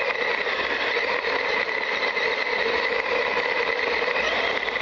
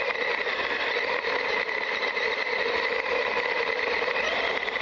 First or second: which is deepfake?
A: second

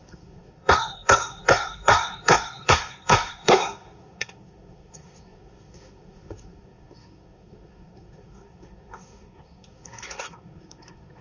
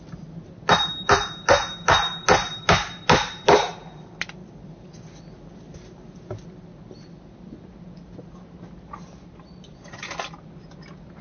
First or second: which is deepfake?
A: first